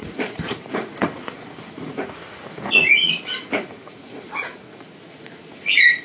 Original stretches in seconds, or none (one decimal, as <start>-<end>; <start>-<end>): none